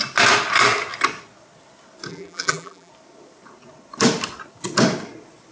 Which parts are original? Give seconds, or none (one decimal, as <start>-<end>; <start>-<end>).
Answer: 0.0-2.1; 2.9-5.5